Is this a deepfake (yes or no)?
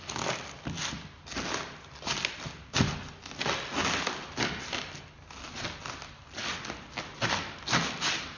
no